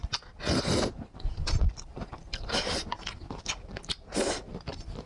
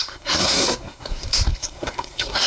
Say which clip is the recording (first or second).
first